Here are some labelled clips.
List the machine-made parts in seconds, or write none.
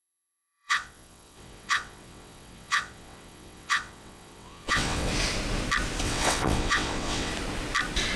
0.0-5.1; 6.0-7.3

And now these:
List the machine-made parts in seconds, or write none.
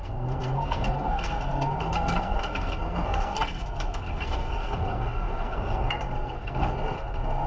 0.0-7.5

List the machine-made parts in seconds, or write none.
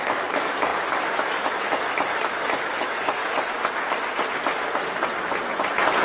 0.0-3.2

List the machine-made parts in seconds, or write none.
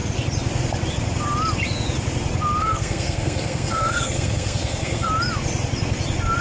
2.6-5.1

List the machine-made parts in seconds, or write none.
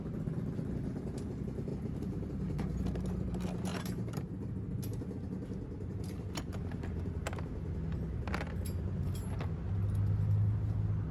1.7-2.8; 3.7-4.3; 5.9-7.2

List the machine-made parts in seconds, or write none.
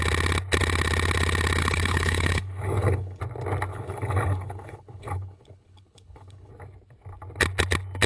1.6-3.2; 3.7-6.5